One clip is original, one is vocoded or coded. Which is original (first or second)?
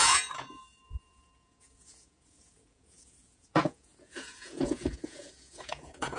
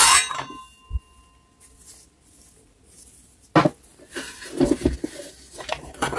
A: second